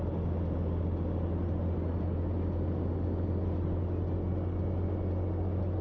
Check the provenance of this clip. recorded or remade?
recorded